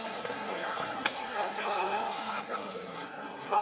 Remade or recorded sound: remade